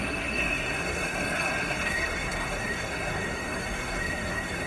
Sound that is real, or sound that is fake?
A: fake